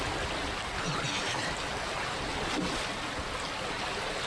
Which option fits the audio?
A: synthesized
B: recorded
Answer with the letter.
B